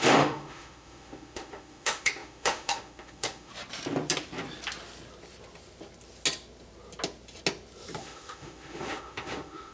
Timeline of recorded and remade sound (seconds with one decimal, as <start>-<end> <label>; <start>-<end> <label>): 0.0-3.5 remade; 3.5-8.0 recorded; 8.0-9.7 remade